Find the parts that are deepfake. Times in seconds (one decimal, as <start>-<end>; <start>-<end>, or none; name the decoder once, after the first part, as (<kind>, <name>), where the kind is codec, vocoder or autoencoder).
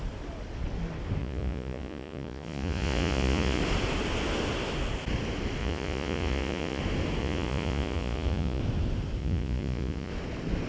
1.2-3.6 (vocoder, Vocos); 5.6-6.8; 7.2-8.6; 9.2-10.1